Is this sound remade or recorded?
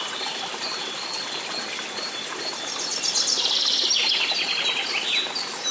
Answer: recorded